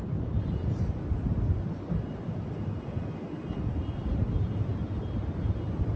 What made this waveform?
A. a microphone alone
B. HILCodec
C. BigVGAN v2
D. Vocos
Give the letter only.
C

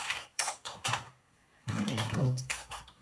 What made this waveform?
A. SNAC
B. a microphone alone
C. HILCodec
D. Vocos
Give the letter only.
A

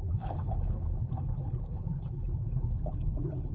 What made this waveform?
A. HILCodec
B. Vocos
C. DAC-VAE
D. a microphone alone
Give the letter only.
A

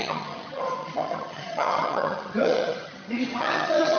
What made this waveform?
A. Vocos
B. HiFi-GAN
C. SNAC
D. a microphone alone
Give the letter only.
B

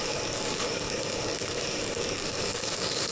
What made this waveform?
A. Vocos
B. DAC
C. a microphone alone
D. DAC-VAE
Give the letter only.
B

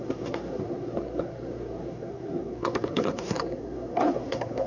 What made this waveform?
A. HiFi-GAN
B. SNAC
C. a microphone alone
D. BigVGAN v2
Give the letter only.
B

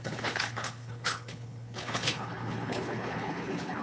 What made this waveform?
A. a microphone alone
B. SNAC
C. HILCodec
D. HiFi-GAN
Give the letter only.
C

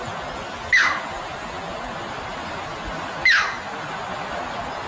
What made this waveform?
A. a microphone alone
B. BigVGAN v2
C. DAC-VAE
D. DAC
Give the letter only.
A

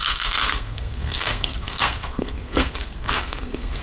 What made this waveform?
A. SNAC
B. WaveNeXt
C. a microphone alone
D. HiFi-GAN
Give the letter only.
A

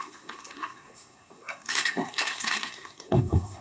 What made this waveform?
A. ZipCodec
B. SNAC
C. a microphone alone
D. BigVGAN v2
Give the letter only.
B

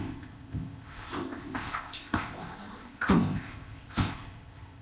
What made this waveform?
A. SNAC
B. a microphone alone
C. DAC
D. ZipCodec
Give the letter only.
D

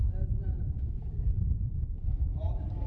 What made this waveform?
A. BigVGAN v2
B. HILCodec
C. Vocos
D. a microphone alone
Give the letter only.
A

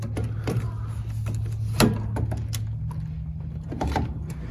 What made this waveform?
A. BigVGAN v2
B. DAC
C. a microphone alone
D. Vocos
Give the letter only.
C